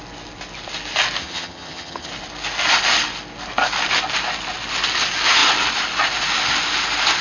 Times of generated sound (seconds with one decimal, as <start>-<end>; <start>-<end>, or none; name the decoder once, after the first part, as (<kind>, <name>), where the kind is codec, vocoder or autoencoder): 1.2-2.1 (vocoder, HiFi-GAN)